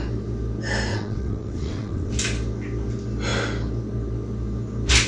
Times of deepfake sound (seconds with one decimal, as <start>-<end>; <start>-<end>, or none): 0.9-2.1